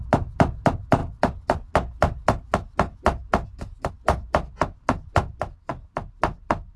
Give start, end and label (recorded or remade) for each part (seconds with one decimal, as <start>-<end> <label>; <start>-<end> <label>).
0.0-6.8 recorded